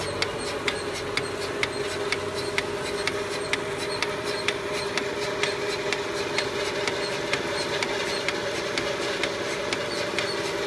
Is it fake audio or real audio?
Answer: real